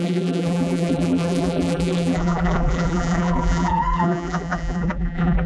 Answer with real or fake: fake